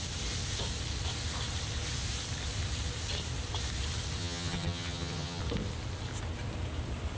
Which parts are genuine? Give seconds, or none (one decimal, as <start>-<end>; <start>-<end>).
0.0-4.2; 5.4-7.2